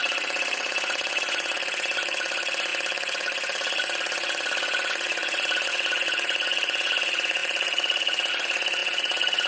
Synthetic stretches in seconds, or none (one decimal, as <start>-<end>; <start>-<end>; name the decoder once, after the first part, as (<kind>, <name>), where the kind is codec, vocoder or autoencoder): 0.0-9.5 (vocoder, Vocos)